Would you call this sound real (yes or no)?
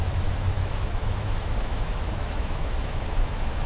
no